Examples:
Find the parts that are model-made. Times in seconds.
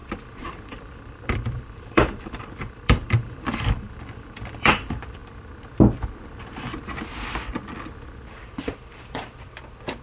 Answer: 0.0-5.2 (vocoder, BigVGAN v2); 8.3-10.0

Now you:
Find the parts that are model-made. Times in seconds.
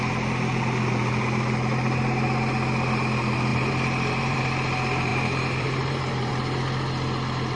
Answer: 3.5-4.4 (vocoder, BigVGAN v2); 5.1-6.3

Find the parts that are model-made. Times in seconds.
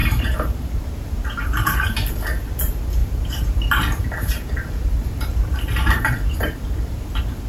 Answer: 0.0-2.1 (vocoder, BigVGAN v2); 3.0-7.5